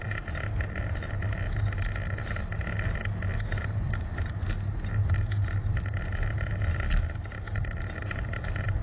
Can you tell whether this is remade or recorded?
recorded